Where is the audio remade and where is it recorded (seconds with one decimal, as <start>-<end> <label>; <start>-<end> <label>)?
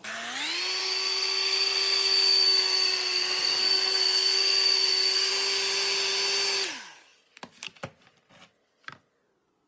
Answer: 0.0-0.8 recorded; 0.8-5.3 remade; 5.3-9.7 recorded